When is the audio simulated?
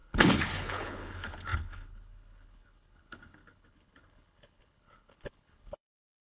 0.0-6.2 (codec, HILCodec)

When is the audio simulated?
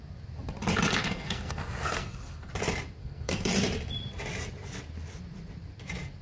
1.0-2.5 (codec, SNAC); 3.0-3.5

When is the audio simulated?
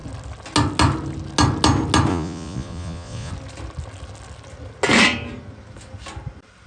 2.1-3.3 (vocoder, Vocos)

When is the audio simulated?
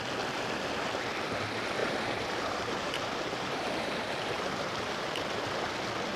1.8-5.5 (vocoder, BigVGAN v2)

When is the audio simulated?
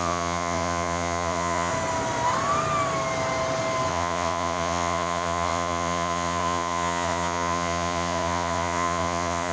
0.0-1.7 (vocoder, Vocos); 3.9-9.5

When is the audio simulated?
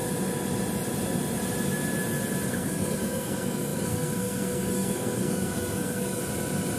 2.5-6.2 (codec, SNAC)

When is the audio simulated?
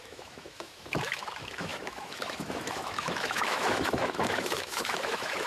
0.0-5.5 (autoencoder, DAC-VAE)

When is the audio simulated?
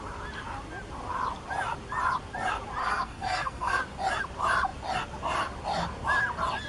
2.8-3.8 (codec, SNAC)